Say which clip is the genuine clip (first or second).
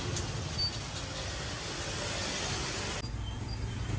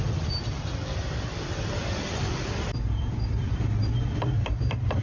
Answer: first